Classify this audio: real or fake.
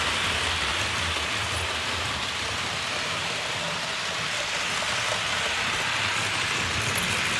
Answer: real